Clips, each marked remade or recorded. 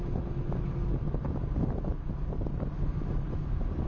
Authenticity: recorded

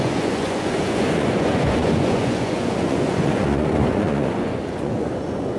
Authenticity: remade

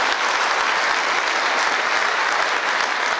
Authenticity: recorded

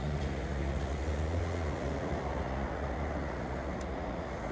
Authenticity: remade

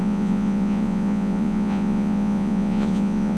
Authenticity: remade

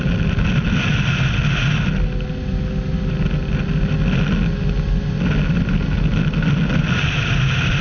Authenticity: recorded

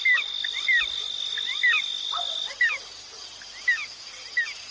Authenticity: recorded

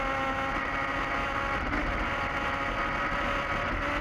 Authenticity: recorded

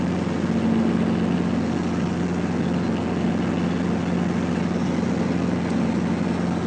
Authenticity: recorded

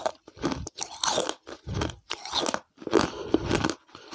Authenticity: recorded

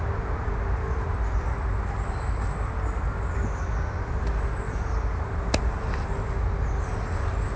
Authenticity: recorded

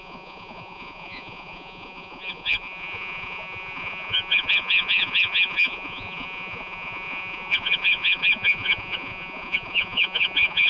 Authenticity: remade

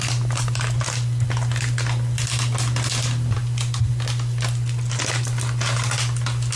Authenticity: recorded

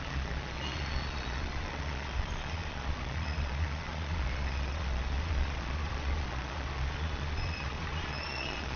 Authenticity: remade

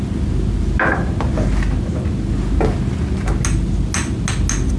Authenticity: recorded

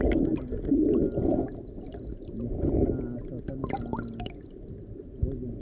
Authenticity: recorded